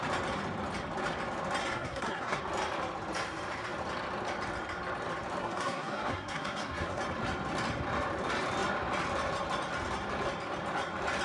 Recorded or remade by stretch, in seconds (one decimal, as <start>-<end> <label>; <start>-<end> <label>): 0.0-1.6 recorded; 1.6-2.4 remade; 2.4-5.4 recorded; 5.4-7.0 remade; 7.0-11.2 recorded